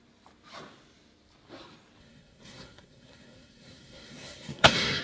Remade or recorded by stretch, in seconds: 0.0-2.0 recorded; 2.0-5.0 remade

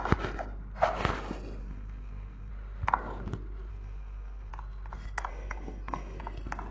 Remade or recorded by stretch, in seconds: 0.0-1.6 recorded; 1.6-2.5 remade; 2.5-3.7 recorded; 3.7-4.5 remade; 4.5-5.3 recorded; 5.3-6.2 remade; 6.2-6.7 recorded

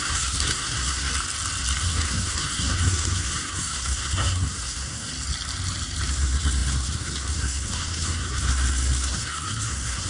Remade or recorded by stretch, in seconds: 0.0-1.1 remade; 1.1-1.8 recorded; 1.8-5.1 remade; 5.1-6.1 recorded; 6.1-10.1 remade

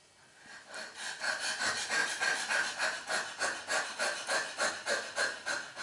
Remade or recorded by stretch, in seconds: 0.0-5.8 recorded

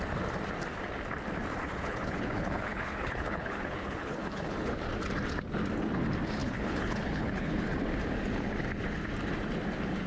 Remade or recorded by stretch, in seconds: 0.0-1.6 recorded; 1.6-4.8 remade; 4.8-6.4 recorded; 6.4-7.8 remade; 7.8-10.1 recorded

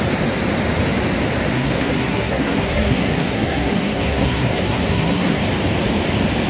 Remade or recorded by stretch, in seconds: 0.0-1.5 recorded; 1.5-5.4 remade; 5.4-6.5 recorded